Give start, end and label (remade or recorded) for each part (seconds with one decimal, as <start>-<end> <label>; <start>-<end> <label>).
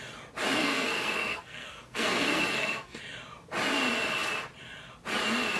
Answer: 0.0-0.6 recorded; 0.6-3.0 remade; 3.0-5.6 recorded